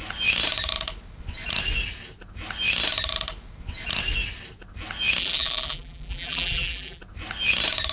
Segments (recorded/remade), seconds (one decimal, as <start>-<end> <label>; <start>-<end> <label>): 0.0-5.2 recorded; 5.2-7.0 remade; 7.0-7.9 recorded